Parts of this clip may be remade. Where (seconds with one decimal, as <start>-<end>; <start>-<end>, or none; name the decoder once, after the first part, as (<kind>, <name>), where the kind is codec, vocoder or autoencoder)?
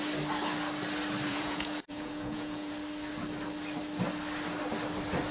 1.3-2.7 (vocoder, Vocos)